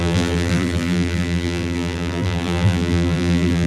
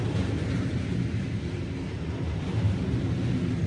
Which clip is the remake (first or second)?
first